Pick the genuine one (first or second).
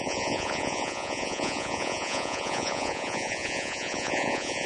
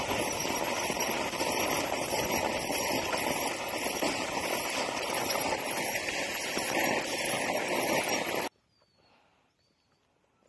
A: second